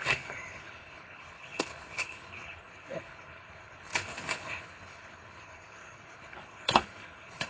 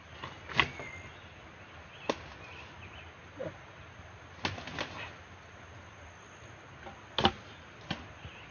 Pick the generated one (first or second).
first